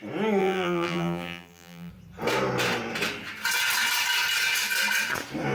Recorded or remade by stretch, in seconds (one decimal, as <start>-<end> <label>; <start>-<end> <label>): 0.0-0.4 recorded; 0.4-1.9 remade; 1.9-5.5 recorded